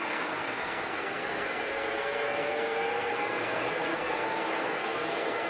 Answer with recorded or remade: remade